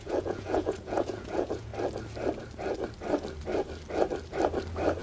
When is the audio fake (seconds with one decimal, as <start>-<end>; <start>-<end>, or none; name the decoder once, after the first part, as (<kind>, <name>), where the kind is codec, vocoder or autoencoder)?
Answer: 0.0-1.7 (vocoder, Vocos)